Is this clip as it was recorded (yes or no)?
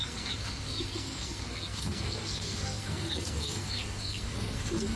no